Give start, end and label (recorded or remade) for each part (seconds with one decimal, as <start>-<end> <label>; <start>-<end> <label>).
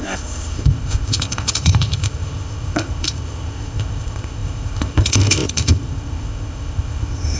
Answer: 0.0-7.4 remade